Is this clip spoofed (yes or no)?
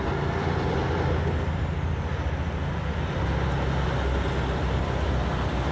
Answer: no